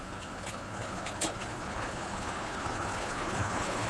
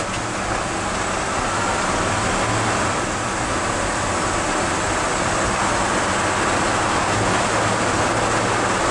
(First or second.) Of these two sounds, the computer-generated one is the first